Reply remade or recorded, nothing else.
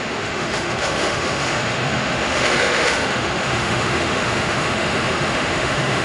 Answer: remade